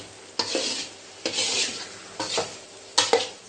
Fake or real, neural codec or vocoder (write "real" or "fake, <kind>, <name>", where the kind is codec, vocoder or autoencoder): real